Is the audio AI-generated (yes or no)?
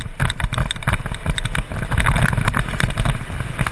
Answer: no